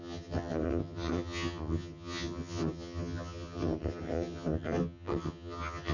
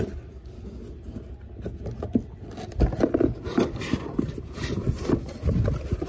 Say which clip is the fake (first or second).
first